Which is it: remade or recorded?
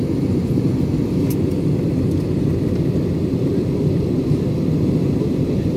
recorded